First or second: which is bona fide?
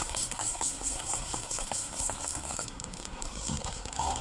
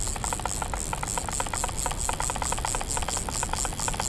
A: second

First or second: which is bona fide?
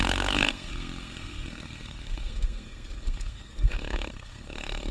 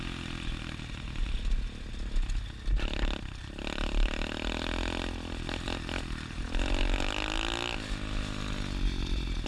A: second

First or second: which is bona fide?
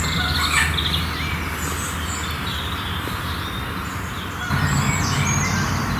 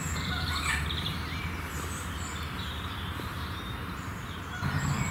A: first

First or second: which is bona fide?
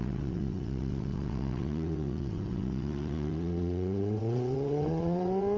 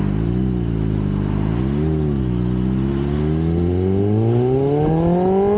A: second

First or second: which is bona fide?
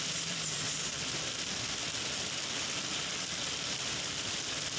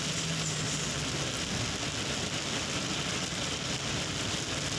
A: second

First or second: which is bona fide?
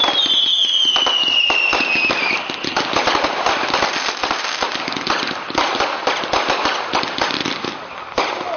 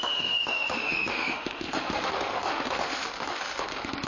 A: first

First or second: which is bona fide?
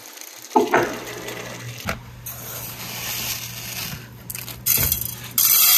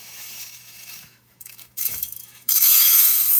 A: first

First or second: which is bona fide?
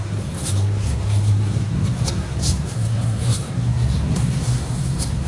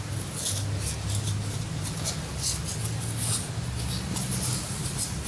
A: second